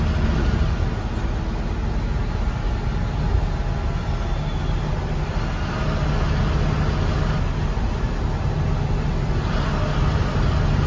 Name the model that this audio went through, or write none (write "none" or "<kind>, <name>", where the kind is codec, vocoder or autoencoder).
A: none